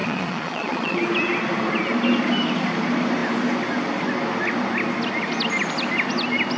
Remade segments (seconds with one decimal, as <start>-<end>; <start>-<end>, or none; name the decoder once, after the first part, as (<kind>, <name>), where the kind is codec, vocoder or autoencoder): 0.0-1.0 (vocoder, Vocos)